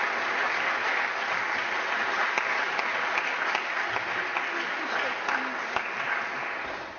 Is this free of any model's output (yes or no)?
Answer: yes